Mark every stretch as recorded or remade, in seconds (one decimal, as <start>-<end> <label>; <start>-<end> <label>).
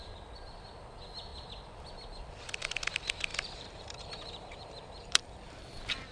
0.0-3.3 recorded; 3.3-5.6 remade; 5.6-6.1 recorded